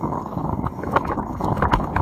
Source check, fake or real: fake